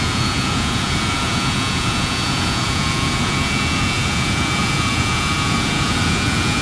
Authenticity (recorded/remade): remade